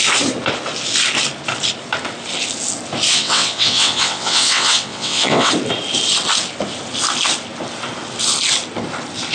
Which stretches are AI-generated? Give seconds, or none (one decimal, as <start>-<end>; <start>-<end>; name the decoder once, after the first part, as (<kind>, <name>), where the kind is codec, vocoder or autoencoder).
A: 3.1-5.5 (vocoder, WaveNeXt)